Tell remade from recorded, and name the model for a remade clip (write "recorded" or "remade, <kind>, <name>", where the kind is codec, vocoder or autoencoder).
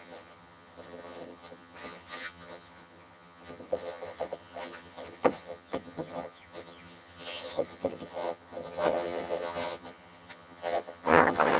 remade, vocoder, HiFi-GAN